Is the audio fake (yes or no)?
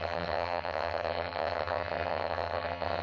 yes